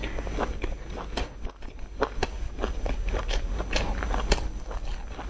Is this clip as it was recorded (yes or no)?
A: yes